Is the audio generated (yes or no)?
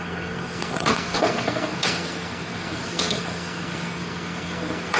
yes